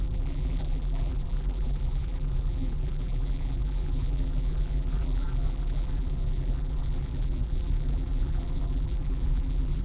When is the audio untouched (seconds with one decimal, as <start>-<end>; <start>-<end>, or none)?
none